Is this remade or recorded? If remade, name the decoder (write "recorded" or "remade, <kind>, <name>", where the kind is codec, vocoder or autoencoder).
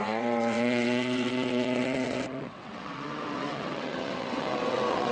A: remade, vocoder, WaveNeXt